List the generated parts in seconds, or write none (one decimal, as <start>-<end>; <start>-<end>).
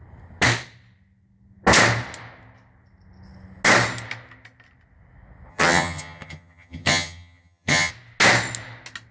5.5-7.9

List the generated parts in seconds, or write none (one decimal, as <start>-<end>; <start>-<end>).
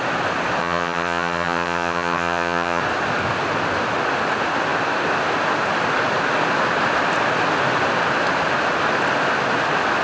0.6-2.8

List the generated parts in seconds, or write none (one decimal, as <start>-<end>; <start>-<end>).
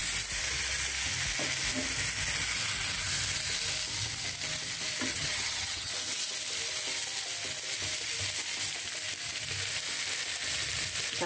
5.1-5.9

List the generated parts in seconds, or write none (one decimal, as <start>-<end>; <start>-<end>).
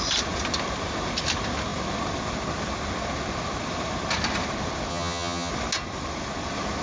4.9-5.5